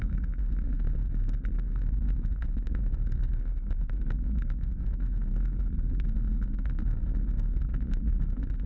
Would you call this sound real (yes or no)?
no